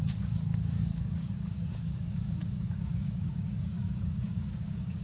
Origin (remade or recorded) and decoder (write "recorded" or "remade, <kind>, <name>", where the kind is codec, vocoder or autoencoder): remade, codec, DAC